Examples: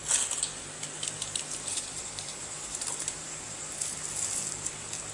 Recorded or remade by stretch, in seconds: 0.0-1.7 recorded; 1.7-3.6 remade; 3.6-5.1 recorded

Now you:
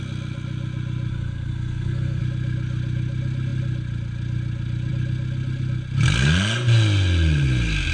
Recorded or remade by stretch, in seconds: 0.0-1.1 recorded; 1.1-2.2 remade; 2.2-7.9 recorded

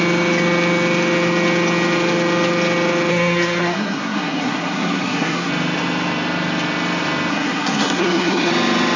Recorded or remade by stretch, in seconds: 0.0-3.1 recorded; 3.1-5.5 remade; 5.5-7.3 recorded; 7.3-8.5 remade; 8.5-9.0 recorded

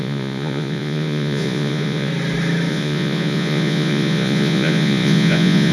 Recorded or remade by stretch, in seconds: 0.0-2.1 remade; 2.1-2.7 recorded; 2.7-5.7 remade

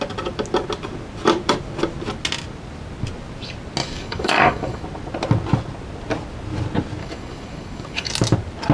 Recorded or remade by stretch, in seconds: 0.0-3.8 recorded; 3.8-4.8 remade; 4.8-7.0 recorded; 7.0-8.1 remade; 8.1-8.7 recorded